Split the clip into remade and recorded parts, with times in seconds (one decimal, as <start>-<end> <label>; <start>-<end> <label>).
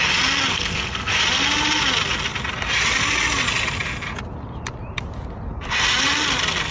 0.0-0.5 recorded; 0.5-1.1 remade; 1.1-6.7 recorded